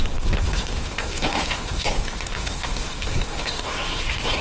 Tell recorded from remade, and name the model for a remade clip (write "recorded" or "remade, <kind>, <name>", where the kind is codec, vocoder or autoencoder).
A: remade, codec, SNAC